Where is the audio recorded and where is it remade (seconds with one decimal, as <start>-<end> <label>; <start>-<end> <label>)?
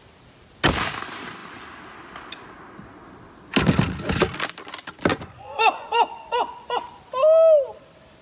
0.0-5.1 recorded; 5.1-6.9 remade; 6.9-8.2 recorded